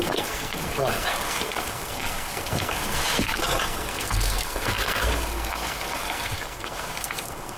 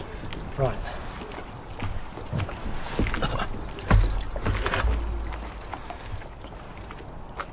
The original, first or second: second